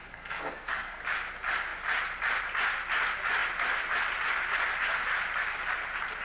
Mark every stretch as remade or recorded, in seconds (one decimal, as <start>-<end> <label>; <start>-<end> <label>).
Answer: 0.0-1.0 remade; 1.0-6.2 recorded